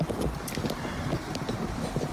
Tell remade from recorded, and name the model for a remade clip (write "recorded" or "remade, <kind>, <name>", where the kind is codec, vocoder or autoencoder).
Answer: recorded